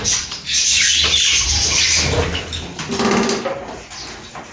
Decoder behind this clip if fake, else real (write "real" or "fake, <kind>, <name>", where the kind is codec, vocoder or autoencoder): real